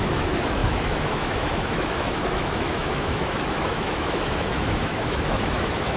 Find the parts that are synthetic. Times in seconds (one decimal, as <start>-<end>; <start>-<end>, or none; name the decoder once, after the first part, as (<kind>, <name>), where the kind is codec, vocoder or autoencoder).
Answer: 0.0-6.0 (autoencoder, DAC-VAE)